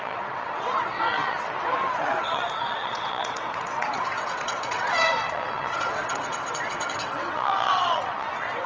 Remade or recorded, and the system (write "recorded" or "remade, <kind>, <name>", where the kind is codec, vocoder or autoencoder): remade, vocoder, WaveNeXt